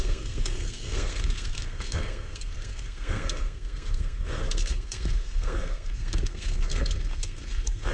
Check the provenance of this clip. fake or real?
fake